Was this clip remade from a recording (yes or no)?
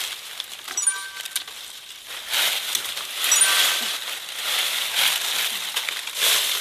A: no